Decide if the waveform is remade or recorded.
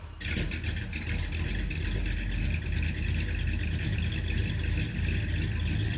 recorded